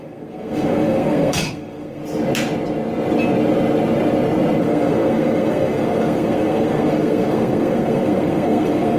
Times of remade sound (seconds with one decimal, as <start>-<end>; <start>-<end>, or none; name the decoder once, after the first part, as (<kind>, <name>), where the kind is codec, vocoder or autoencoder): 0.0-2.0 (codec, SNAC); 4.6-9.0